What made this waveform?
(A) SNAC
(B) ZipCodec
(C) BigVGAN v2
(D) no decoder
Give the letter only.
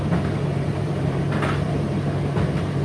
C